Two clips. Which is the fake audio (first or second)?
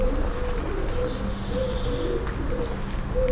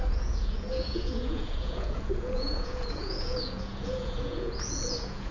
second